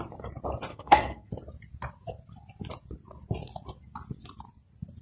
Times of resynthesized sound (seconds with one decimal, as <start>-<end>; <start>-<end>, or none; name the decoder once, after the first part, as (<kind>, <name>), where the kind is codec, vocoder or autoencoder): 0.7-1.3 (codec, SNAC)

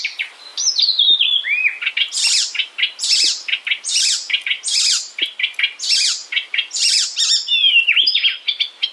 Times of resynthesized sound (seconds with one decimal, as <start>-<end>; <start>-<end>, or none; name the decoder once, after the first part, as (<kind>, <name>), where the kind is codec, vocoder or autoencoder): none

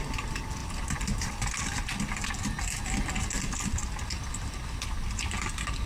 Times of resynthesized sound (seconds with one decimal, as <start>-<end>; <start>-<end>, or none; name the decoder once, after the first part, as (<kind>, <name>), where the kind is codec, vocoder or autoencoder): 0.6-1.3 (vocoder, BigVGAN v2)

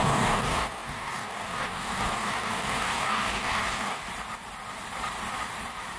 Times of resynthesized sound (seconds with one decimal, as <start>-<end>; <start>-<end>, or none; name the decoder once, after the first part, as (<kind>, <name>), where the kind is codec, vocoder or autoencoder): 0.0-4.0 (codec, DAC)

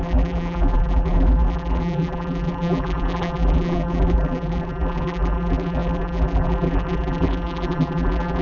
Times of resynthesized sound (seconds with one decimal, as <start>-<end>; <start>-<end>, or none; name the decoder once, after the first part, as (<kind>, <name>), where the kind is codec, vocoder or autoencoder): 0.0-8.4 (vocoder, BigVGAN v2)

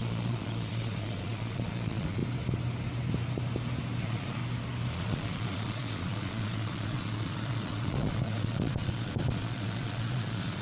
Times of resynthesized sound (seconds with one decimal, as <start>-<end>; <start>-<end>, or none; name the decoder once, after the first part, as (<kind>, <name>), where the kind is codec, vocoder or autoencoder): 0.0-2.2 (vocoder, Vocos); 4.0-4.4; 4.9-10.6

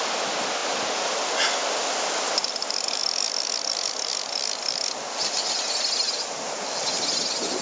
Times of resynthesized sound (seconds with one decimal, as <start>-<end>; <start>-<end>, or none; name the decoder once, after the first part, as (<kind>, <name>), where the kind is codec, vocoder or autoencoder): none